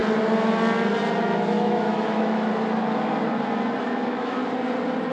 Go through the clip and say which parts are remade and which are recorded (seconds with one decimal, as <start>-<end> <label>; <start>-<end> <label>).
0.0-1.2 recorded; 1.2-2.5 remade; 2.5-3.8 recorded; 3.8-4.4 remade; 4.4-5.1 recorded